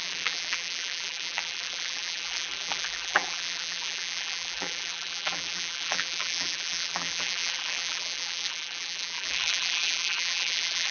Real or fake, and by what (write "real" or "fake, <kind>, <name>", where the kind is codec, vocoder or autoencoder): fake, vocoder, BigVGAN v2